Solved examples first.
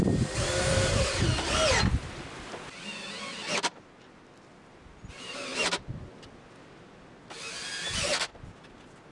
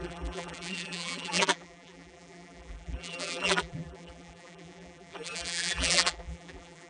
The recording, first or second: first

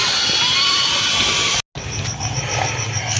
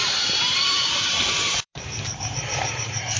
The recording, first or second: first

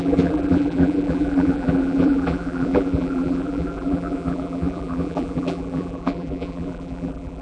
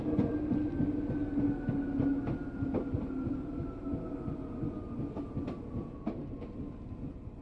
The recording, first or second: second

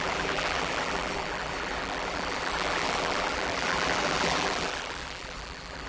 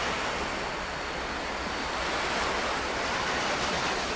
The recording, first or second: second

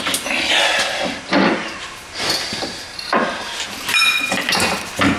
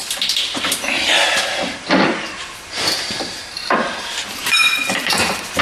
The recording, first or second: first